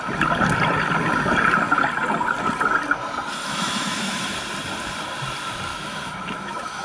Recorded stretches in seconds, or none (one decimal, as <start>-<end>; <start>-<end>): 0.0-3.4; 4.4-5.7